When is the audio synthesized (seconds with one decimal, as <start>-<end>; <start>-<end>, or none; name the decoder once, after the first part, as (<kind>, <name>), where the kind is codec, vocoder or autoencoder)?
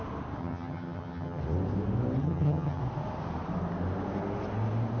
0.4-1.4 (vocoder, HiFi-GAN); 2.2-2.8